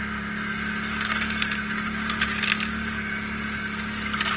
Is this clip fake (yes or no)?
no